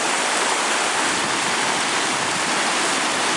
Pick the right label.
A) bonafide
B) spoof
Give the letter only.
A